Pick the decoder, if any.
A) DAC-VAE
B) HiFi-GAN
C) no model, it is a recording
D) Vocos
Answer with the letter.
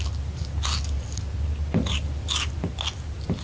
C